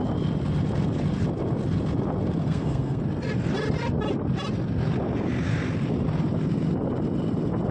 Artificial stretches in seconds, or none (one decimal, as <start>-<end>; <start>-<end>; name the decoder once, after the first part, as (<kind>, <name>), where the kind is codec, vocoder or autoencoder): 2.4-3.0 (codec, SNAC)